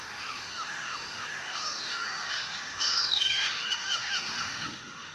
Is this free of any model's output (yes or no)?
no